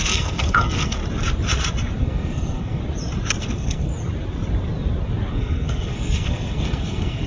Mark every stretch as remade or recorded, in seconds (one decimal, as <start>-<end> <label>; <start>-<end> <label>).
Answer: 0.0-1.0 remade; 1.0-2.0 recorded; 2.0-2.8 remade; 2.8-3.4 recorded; 3.4-3.9 remade; 3.9-5.3 recorded; 5.3-7.3 remade

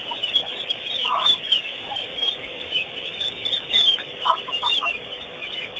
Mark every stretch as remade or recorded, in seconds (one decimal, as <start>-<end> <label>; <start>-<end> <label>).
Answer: 0.0-5.8 remade